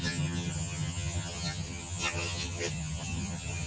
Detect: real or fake fake